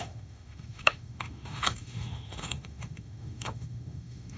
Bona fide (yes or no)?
no